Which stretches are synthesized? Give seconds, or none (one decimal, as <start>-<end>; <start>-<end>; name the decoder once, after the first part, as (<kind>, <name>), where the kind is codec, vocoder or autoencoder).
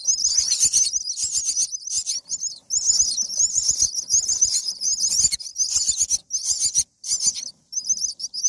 none